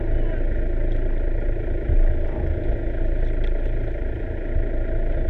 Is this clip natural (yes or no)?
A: yes